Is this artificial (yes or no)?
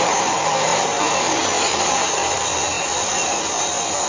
yes